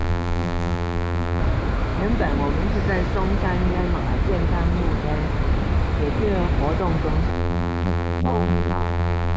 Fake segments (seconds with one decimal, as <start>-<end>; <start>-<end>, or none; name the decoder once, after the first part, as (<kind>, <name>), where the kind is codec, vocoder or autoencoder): 0.0-1.4 (vocoder, BigVGAN v2); 7.3-9.4